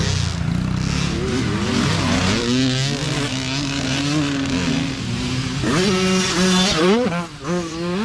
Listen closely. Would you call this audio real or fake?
real